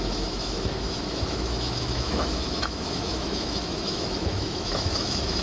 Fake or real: fake